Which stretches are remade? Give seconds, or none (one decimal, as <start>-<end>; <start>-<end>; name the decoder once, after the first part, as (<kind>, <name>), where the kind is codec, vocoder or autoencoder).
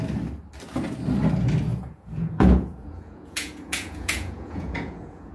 1.7-5.3 (vocoder, Vocos)